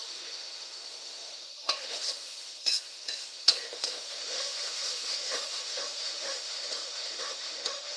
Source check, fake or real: fake